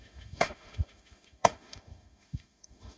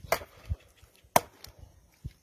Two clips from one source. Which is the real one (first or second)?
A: second